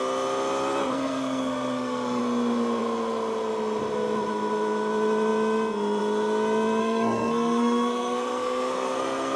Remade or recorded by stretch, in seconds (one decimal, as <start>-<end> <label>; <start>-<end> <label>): 0.0-0.8 recorded; 0.8-2.2 remade; 2.2-6.8 recorded; 6.8-9.4 remade